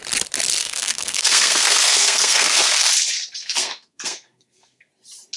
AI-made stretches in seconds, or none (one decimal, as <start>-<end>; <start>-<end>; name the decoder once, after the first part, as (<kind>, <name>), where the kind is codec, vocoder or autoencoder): 0.6-2.9 (codec, SNAC); 3.4-4.9